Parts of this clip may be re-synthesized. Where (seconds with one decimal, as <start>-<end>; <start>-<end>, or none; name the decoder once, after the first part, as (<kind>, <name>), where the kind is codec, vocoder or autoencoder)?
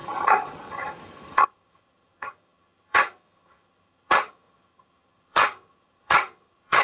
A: 0.0-6.8 (vocoder, HiFi-GAN)